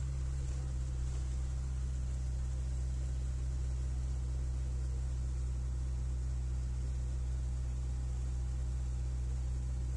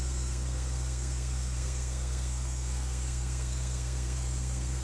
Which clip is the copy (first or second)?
second